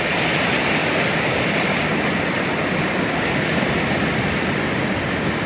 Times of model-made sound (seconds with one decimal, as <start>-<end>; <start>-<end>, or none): 0.0-1.9; 2.7-5.5